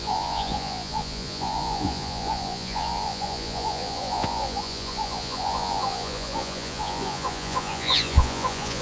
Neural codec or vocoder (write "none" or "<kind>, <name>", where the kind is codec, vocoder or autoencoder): vocoder, Vocos